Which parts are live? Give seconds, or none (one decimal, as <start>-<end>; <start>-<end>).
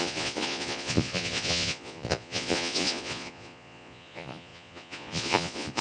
none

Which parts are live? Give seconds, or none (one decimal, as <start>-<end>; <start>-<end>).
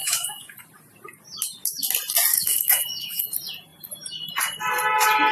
0.6-2.3; 3.2-5.3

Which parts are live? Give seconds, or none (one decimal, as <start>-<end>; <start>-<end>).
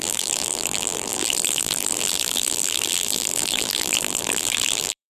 none